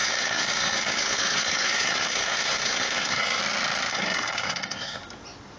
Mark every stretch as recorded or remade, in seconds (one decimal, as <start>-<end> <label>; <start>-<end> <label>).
0.0-3.4 remade; 3.4-3.9 recorded; 3.9-5.0 remade; 5.0-5.6 recorded